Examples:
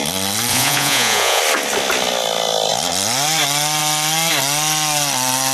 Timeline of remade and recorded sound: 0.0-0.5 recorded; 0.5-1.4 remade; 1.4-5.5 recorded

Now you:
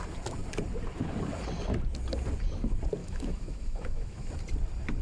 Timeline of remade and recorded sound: 0.0-3.0 recorded; 3.0-4.3 remade; 4.3-5.0 recorded

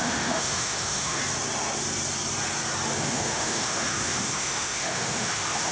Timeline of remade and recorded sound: 0.0-1.2 remade; 1.2-3.0 recorded; 3.0-5.7 remade

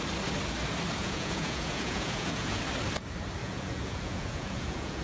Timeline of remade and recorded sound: 0.0-1.0 recorded; 1.0-2.6 remade; 2.6-3.4 recorded; 3.4-5.0 remade

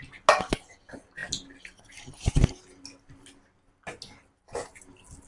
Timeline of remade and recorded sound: 0.0-5.3 recorded

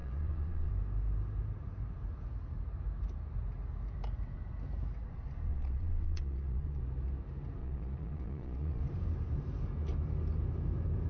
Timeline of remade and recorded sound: 0.0-0.7 remade; 0.7-5.5 recorded; 5.5-6.8 remade; 6.8-7.6 recorded; 7.6-8.8 remade; 8.8-11.1 recorded